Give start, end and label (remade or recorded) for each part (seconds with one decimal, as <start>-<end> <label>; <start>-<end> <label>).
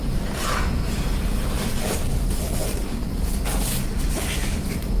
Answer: 0.0-5.0 recorded